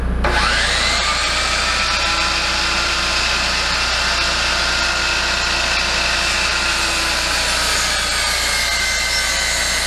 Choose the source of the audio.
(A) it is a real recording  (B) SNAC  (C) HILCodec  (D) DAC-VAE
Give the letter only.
A